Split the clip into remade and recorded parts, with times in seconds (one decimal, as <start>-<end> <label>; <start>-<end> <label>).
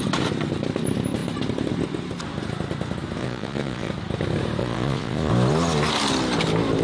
0.0-3.2 recorded; 3.2-3.9 remade; 3.9-4.6 recorded; 4.6-5.3 remade; 5.3-6.8 recorded